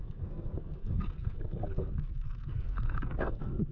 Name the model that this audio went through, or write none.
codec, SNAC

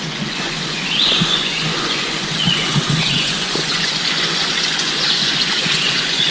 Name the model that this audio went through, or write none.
vocoder, Vocos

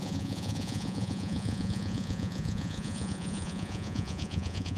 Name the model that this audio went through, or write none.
vocoder, Vocos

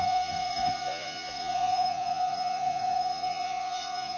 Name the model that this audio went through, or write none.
vocoder, Vocos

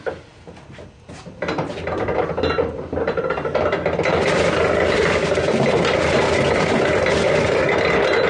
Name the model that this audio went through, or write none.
none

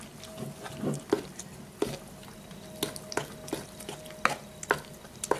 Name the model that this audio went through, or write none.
none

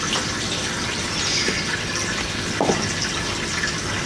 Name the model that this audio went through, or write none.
none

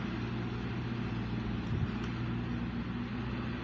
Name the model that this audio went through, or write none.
none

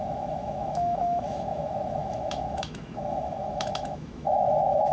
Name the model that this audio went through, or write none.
autoencoder, DAC-VAE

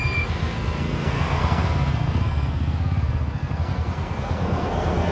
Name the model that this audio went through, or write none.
codec, SNAC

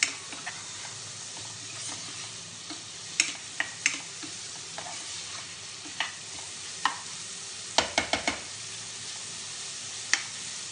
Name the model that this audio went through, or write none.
none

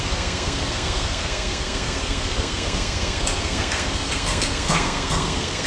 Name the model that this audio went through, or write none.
codec, SNAC